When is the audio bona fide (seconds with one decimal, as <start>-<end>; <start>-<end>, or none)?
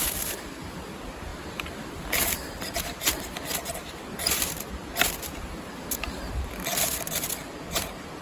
6.9-8.2